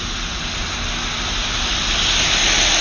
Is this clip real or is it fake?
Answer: real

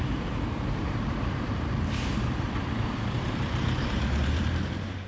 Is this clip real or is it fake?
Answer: fake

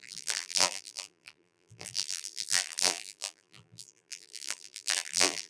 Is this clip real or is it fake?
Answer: fake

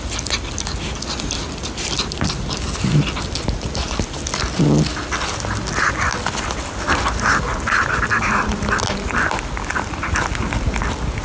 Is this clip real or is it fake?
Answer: real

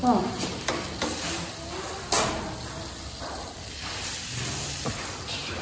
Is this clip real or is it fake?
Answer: real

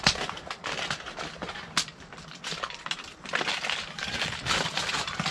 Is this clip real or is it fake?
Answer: real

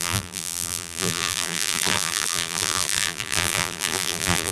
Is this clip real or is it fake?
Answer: fake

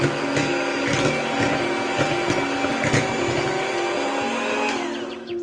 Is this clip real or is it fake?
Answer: real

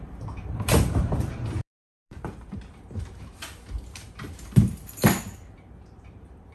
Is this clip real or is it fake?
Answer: fake